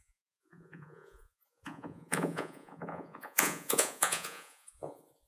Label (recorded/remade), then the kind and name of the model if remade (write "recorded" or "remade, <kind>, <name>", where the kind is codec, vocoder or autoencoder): remade, vocoder, Vocos